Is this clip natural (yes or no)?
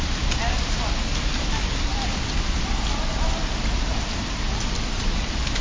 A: yes